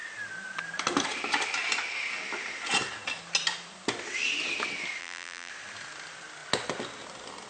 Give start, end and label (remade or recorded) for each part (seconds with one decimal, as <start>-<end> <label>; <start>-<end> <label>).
0.0-5.0 recorded; 5.0-5.5 remade; 5.5-7.5 recorded

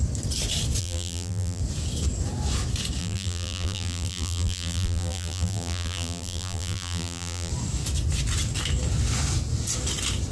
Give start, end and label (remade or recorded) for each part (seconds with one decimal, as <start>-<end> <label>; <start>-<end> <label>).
0.0-0.8 recorded; 0.8-1.6 remade; 1.6-3.0 recorded; 3.0-7.5 remade; 7.5-10.3 recorded